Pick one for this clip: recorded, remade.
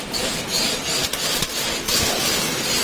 recorded